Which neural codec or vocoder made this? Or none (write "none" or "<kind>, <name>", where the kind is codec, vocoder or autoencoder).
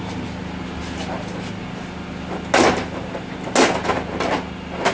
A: none